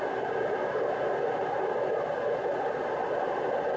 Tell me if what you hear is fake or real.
real